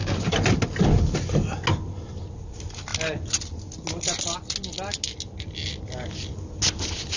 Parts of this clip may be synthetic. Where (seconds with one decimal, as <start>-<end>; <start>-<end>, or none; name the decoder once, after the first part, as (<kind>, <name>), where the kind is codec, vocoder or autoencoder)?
none